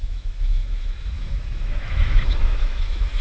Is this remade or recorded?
remade